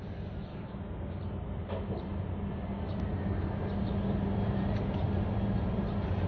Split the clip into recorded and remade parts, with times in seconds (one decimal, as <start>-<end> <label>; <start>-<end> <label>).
0.0-0.5 recorded; 0.5-1.2 remade; 1.2-6.3 recorded